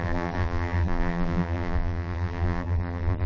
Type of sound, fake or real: fake